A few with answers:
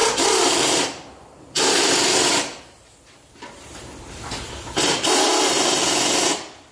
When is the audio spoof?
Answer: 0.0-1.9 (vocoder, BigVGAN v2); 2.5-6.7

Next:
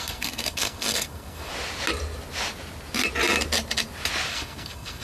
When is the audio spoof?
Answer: 0.0-1.5 (codec, SNAC); 4.3-5.0

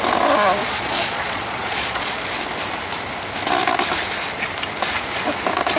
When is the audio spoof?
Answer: 0.6-2.2 (vocoder, Vocos)

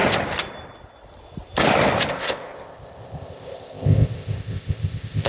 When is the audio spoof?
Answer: 2.1-5.3 (codec, ZipCodec)

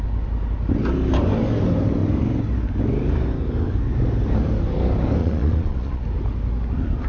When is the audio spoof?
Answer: 5.2-6.0 (vocoder, Vocos)

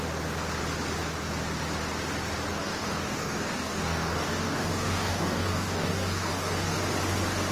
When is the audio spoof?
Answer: 2.5-6.8 (codec, DAC)

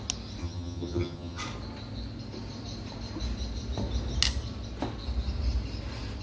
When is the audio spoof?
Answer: 0.4-1.4 (vocoder, HiFi-GAN)